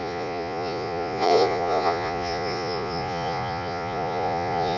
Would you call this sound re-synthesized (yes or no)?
yes